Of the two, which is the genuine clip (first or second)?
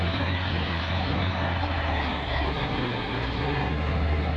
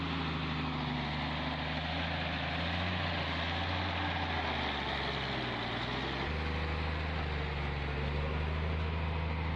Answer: second